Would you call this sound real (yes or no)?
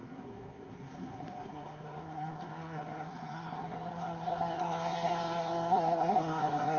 no